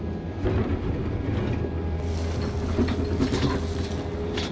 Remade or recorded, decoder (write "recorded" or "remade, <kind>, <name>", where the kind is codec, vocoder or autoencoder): recorded